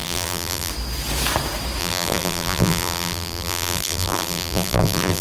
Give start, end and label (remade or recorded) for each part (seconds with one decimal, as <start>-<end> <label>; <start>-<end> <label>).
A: 0.0-0.7 remade; 0.7-1.8 recorded; 1.8-5.2 remade